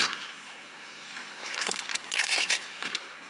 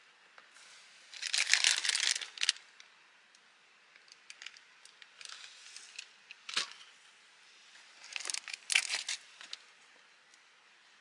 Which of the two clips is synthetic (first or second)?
first